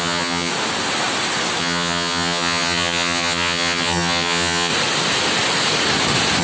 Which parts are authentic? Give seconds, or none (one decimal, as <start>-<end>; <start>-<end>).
0.5-1.6; 4.7-6.4

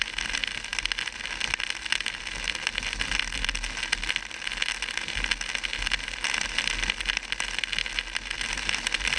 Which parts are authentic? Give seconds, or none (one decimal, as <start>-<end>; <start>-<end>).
0.0-9.2

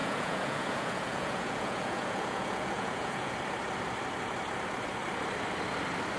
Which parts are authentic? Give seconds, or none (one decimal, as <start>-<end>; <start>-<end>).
3.3-6.2